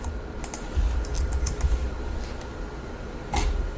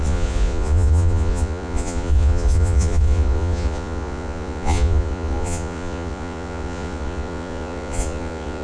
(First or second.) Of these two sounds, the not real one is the second